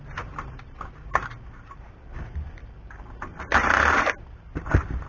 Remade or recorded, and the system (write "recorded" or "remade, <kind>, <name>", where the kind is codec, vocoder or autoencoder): remade, vocoder, BigVGAN v2